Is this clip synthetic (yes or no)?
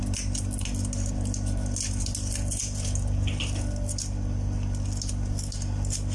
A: no